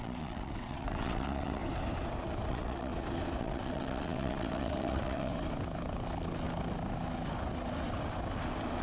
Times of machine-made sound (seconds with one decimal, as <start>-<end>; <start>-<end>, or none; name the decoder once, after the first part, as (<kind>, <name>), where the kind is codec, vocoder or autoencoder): 0.0-1.6 (vocoder, WaveNeXt); 2.5-2.9; 3.4-5.3